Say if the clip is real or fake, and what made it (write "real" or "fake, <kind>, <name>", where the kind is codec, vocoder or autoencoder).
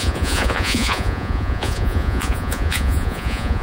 fake, vocoder, Vocos